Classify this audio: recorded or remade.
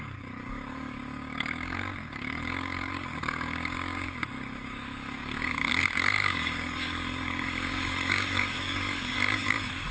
remade